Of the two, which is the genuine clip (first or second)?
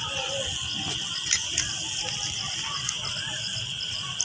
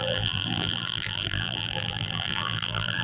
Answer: first